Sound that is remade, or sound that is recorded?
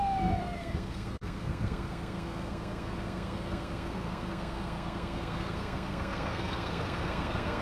remade